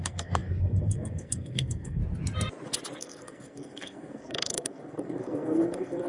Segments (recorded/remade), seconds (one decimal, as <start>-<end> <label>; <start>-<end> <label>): 0.0-2.0 remade; 2.0-3.0 recorded; 3.0-6.1 remade